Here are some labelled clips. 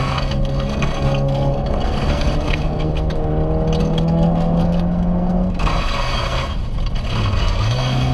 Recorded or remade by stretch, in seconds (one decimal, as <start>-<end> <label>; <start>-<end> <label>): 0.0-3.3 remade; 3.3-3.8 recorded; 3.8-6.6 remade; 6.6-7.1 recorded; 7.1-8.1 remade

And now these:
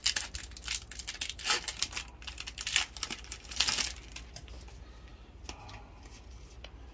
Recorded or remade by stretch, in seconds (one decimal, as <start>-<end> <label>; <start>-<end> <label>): 0.0-6.9 recorded

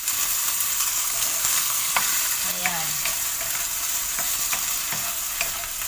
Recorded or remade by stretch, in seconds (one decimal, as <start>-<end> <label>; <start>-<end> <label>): 0.0-0.8 recorded; 0.8-2.0 remade; 2.0-5.9 recorded

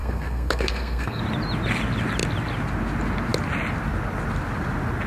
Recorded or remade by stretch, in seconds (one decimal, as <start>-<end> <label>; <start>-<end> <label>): 0.0-1.2 remade; 1.2-5.1 recorded